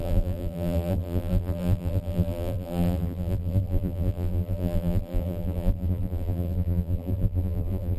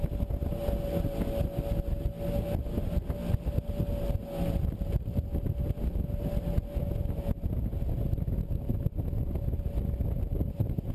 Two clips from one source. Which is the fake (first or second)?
first